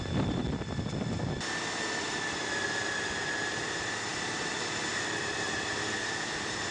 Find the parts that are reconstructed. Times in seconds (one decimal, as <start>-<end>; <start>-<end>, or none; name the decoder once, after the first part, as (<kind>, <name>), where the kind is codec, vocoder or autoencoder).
0.0-0.4 (vocoder, BigVGAN v2); 1.1-6.7